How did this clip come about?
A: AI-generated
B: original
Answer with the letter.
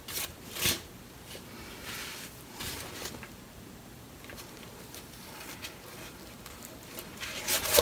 A